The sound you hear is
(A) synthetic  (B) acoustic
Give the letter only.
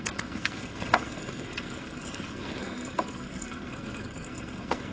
A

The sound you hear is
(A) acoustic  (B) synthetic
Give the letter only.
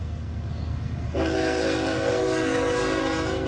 B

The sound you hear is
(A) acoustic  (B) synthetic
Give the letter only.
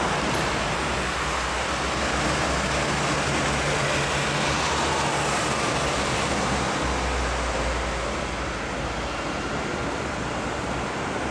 A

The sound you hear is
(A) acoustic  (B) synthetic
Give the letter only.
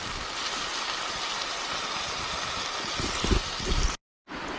A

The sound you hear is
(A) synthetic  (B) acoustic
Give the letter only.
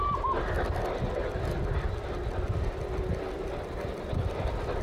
B